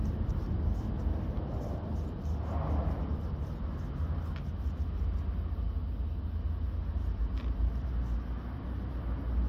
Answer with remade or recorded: recorded